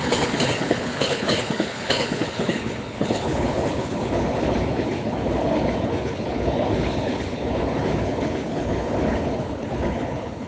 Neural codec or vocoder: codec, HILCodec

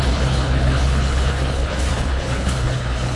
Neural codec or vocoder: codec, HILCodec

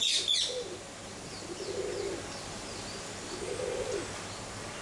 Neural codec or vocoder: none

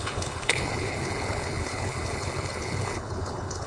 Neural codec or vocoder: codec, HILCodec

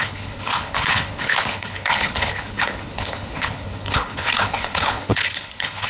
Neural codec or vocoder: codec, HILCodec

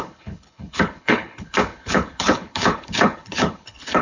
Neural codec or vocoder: codec, HILCodec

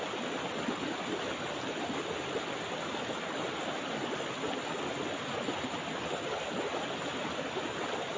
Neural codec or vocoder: none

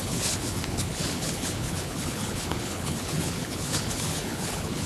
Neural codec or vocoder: codec, HILCodec